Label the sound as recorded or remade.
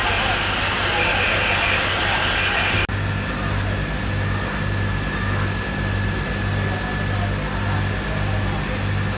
recorded